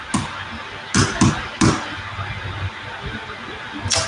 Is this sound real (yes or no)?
yes